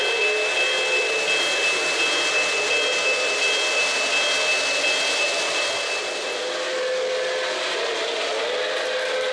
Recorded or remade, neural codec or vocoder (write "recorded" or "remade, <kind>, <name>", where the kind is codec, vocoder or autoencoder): recorded